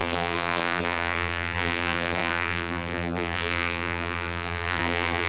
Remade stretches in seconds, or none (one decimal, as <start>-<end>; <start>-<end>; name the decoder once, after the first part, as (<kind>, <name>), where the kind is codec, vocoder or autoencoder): 0.0-5.3 (vocoder, BigVGAN v2)